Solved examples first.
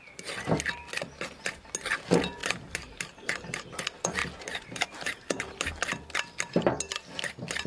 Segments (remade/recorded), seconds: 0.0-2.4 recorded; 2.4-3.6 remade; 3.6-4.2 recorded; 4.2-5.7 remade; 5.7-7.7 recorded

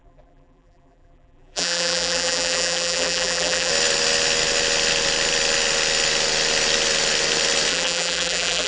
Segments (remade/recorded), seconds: 0.0-3.7 remade; 3.7-7.7 recorded; 7.7-8.7 remade

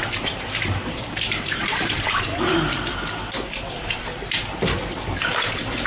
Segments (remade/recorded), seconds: 0.0-2.3 remade; 2.3-5.9 recorded

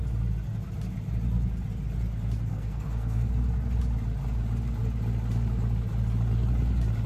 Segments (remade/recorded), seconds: 0.0-2.5 recorded; 2.5-3.3 remade; 3.3-7.1 recorded

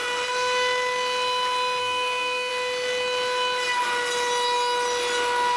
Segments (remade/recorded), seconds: 0.0-1.8 recorded; 1.8-2.5 remade; 2.5-5.6 recorded

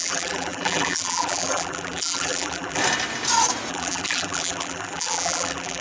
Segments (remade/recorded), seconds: 0.0-2.8 remade; 2.8-3.7 recorded; 3.7-5.8 remade

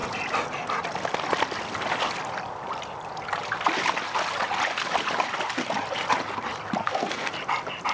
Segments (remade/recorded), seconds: 0.0-6.8 recorded; 6.8-7.3 remade; 7.3-7.9 recorded